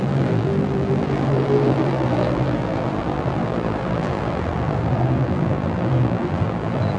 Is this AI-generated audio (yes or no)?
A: yes